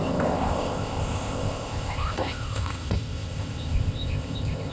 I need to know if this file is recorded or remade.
remade